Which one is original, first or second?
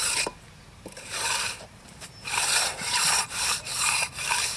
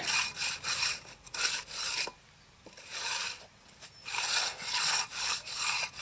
second